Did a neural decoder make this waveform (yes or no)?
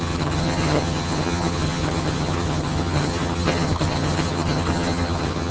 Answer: yes